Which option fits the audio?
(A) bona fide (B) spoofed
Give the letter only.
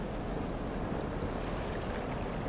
A